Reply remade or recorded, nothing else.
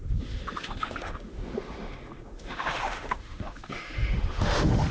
remade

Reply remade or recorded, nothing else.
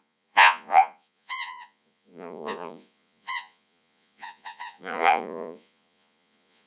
remade